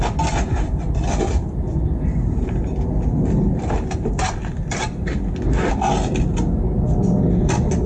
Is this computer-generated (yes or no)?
no